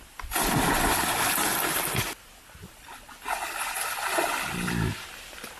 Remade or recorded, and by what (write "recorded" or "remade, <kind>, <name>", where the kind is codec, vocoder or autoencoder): recorded